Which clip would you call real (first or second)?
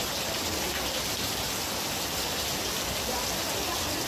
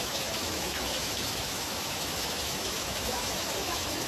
first